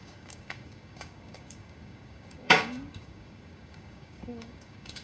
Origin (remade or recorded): remade